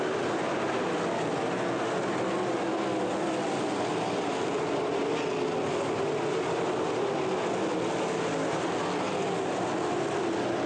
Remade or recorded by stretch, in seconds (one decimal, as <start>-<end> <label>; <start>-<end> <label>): 0.0-10.7 recorded